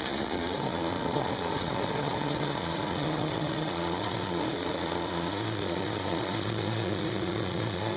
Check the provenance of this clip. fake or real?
fake